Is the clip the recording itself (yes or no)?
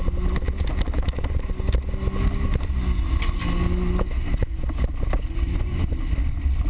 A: yes